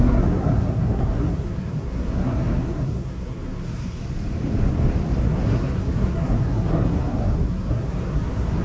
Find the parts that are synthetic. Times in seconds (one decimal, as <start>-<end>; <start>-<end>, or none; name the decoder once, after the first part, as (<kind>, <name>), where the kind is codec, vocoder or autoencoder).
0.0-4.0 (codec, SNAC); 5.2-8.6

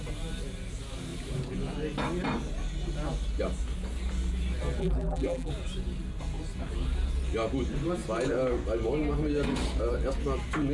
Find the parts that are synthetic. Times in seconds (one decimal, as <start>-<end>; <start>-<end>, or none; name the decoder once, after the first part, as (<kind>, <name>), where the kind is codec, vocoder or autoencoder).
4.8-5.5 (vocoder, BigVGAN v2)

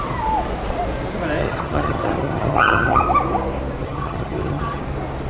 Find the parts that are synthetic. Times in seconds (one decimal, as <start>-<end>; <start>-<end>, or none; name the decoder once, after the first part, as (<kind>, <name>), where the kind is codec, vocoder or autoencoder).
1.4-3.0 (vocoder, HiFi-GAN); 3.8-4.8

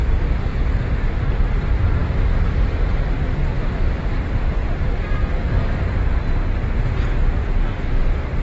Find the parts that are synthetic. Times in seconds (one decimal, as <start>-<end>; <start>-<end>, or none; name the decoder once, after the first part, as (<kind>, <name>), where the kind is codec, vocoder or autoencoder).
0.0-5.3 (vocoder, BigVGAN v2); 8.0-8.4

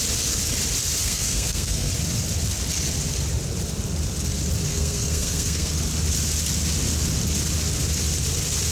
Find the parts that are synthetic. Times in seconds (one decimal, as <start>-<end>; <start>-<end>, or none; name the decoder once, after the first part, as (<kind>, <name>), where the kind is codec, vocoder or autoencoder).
1.0-1.9 (codec, SNAC); 4.7-5.7